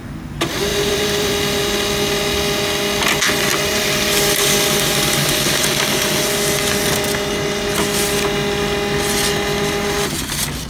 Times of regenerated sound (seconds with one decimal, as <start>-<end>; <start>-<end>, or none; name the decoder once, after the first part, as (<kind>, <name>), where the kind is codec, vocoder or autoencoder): 0.7-1.3 (vocoder, BigVGAN v2); 3.5-4.0